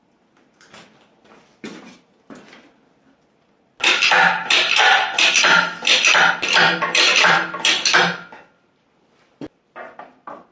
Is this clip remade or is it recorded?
recorded